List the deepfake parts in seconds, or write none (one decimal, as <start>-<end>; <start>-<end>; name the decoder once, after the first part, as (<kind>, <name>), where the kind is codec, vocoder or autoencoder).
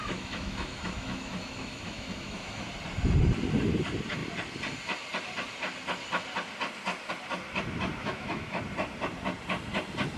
0.0-2.7 (autoencoder, DAC-VAE); 8.0-8.6